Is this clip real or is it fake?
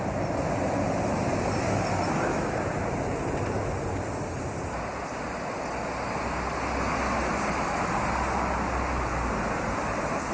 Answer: real